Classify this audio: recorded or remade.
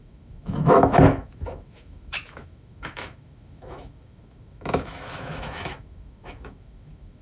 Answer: remade